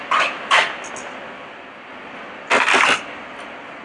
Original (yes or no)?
yes